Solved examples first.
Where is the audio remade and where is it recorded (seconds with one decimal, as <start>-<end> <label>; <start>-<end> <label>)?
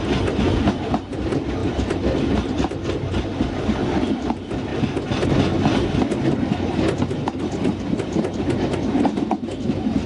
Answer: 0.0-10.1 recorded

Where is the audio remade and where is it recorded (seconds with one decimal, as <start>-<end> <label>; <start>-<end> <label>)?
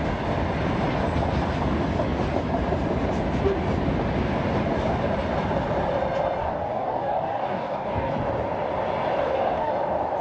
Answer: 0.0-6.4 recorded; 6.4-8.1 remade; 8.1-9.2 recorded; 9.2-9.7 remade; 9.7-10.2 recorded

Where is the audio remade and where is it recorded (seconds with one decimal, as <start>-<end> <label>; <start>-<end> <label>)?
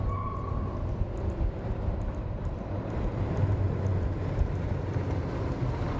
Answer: 0.0-6.0 recorded